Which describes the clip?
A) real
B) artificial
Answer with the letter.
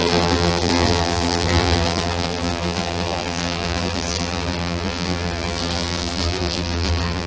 B